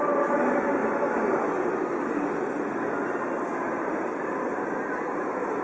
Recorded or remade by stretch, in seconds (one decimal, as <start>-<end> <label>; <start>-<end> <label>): 0.0-5.6 recorded